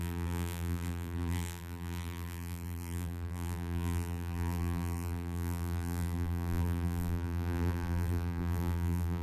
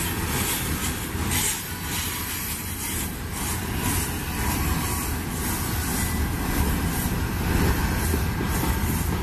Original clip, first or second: second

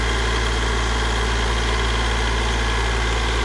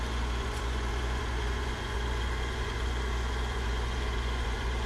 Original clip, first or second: first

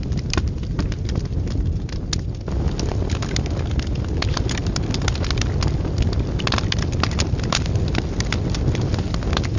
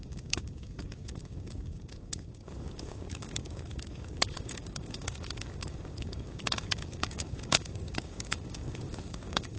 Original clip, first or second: first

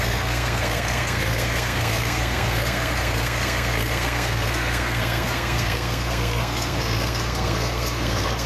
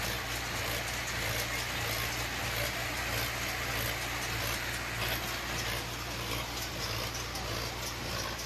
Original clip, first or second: second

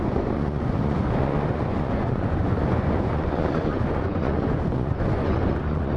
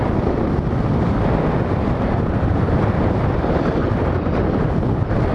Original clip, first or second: second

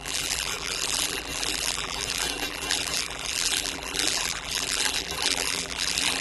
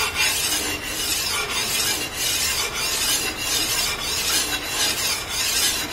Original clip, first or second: second